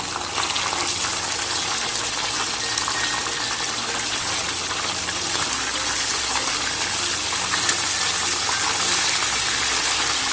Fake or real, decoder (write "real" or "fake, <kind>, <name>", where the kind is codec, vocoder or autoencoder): real